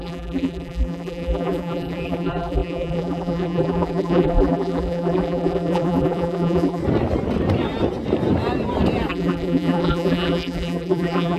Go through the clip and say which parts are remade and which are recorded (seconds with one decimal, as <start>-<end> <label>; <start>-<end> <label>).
0.0-6.8 remade; 6.8-9.1 recorded; 9.1-11.4 remade